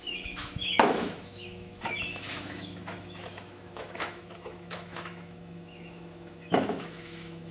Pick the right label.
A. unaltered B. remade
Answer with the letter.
B